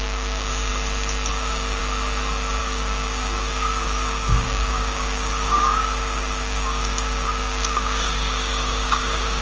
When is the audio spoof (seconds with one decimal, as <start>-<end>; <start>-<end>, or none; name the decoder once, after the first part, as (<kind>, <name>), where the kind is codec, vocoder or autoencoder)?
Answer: 0.0-0.7 (codec, DAC); 1.3-1.8; 2.6-9.4